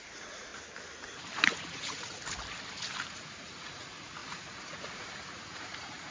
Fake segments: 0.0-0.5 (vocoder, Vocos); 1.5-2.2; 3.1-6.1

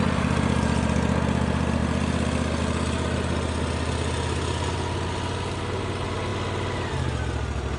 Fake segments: none

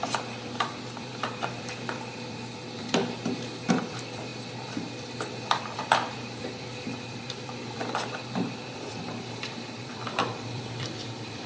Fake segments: 0.0-3.0 (vocoder, BigVGAN v2); 3.7-11.5

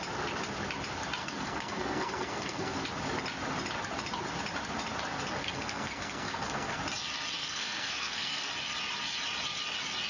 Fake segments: 1.2-2.8 (codec, SNAC); 5.4-6.8; 7.4-8.5

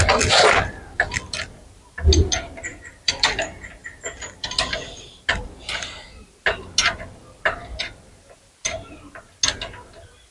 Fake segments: 2.7-3.3 (vocoder, BigVGAN v2); 6.8-8.1

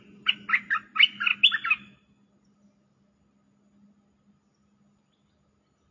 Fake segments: none

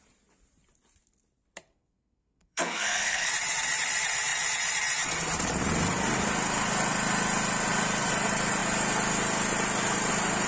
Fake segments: 1.7-3.3 (codec, SNAC)

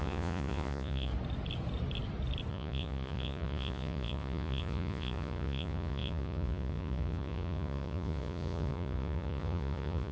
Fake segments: 0.0-1.1 (vocoder, Vocos); 2.5-10.1